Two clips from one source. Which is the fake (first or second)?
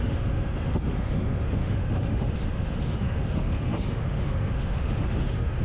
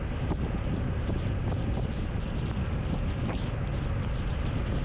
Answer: first